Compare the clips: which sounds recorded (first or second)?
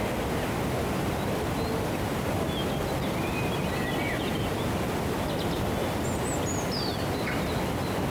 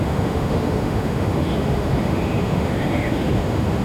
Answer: first